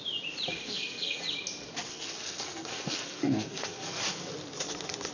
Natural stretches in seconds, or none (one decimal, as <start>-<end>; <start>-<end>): 0.0-0.6; 1.2-1.9; 4.0-5.1